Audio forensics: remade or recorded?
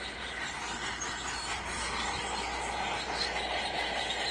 recorded